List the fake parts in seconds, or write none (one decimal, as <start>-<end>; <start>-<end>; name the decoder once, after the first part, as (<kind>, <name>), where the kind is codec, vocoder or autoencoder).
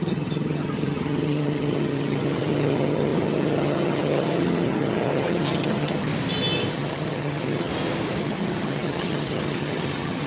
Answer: 0.0-6.1 (vocoder, HiFi-GAN); 6.7-7.7; 8.2-10.3